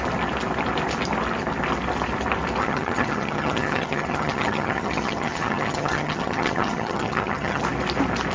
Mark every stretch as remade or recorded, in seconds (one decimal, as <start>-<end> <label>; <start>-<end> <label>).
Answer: 0.0-2.6 recorded; 2.6-7.6 remade; 7.6-8.3 recorded